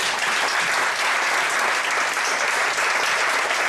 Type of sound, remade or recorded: recorded